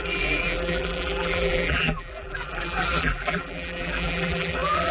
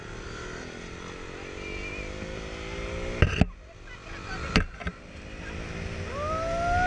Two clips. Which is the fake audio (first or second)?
first